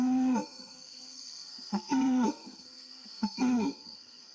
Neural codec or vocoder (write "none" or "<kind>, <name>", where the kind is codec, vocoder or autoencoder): codec, SNAC